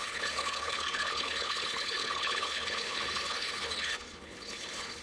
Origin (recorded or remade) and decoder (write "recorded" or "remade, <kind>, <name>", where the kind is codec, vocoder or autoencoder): remade, codec, HILCodec